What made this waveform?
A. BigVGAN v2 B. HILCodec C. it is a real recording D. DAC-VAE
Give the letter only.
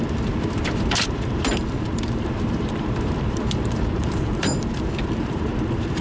A